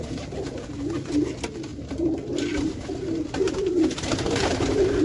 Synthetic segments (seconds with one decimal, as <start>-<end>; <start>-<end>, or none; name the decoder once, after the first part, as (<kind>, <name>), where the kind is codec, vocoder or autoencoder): 1.7-5.0 (vocoder, BigVGAN v2)